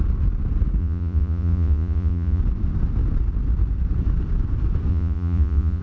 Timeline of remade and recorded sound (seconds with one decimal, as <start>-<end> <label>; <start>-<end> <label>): 0.0-0.8 recorded; 0.8-2.4 remade; 2.4-4.9 recorded; 4.9-5.8 remade